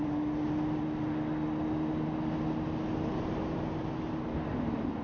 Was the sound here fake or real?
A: real